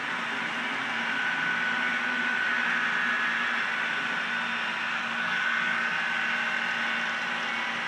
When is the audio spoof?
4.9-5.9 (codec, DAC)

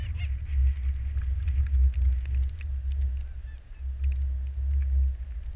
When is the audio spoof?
none

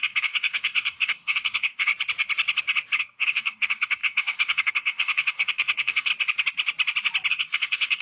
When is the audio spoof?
0.0-1.9 (codec, DAC); 3.0-6.1; 7.3-8.0

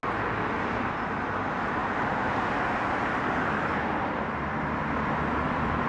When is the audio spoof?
none